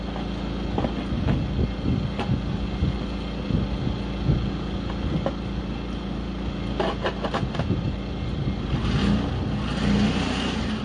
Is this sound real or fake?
real